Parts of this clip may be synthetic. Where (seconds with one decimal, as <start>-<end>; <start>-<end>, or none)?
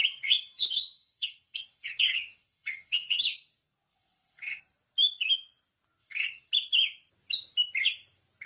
0.0-3.2; 3.9-4.6; 6.0-6.5